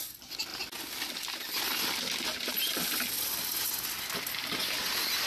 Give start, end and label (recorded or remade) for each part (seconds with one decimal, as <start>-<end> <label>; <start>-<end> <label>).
0.0-5.3 recorded